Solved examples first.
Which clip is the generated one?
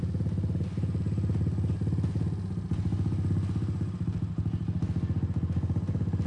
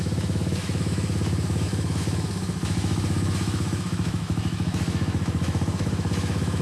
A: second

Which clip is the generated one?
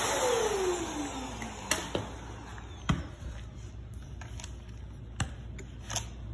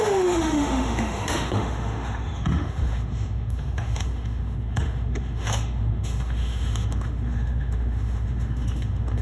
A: second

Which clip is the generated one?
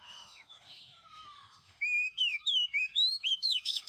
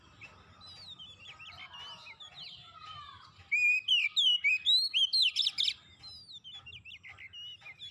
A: first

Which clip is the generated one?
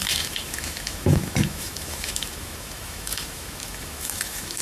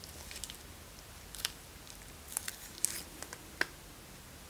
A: first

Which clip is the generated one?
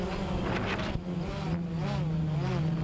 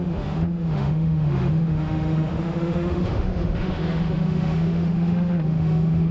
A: second